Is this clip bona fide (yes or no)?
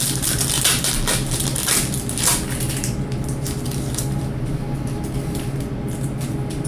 yes